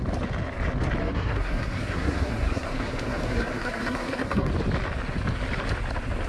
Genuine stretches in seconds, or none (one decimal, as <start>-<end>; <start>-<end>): 0.0-1.0; 4.5-6.3